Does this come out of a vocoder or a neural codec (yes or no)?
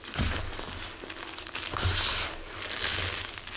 no